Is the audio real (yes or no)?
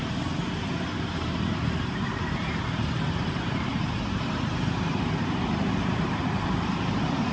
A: no